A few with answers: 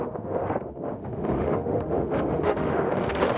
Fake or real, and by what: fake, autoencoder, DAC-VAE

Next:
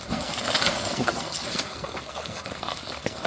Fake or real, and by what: fake, codec, SNAC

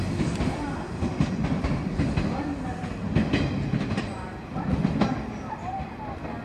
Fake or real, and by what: real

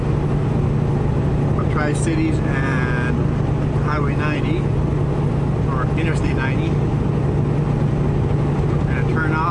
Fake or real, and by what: real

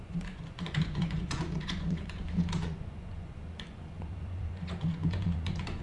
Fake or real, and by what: fake, vocoder, Vocos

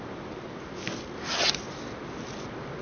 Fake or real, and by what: real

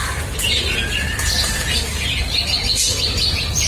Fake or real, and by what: real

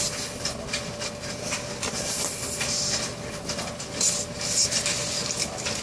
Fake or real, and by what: real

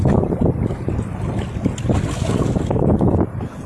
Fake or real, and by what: real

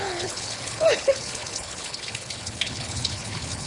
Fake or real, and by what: fake, codec, HILCodec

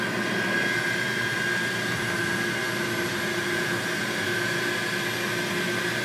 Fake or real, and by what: real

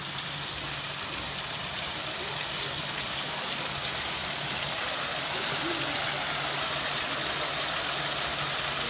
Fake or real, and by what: real